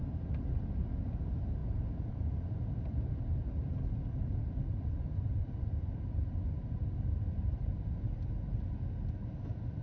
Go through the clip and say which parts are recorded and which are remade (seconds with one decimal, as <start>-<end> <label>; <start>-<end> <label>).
0.0-1.6 recorded; 1.6-3.1 remade; 3.1-4.4 recorded; 4.4-8.7 remade; 8.7-9.8 recorded

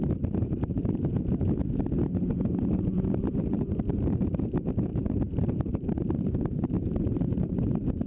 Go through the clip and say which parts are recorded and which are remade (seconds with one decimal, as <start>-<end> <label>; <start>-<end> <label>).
0.0-1.1 remade; 1.1-2.7 recorded; 2.7-8.1 remade

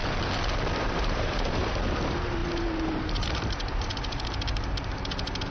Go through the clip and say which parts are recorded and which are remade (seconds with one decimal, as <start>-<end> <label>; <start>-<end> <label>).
0.0-0.8 recorded; 0.8-5.5 remade

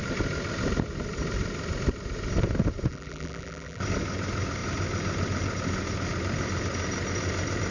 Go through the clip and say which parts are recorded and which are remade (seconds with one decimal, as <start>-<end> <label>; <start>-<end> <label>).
0.0-2.9 recorded; 2.9-3.8 remade; 3.8-7.7 recorded

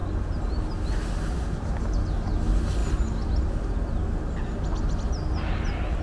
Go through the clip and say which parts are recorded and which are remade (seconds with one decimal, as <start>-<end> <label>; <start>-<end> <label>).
0.0-6.0 recorded

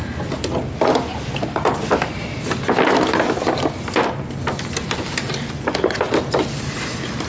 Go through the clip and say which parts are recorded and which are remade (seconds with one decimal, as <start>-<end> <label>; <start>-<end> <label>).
0.0-1.1 recorded; 1.1-1.8 remade; 1.8-7.3 recorded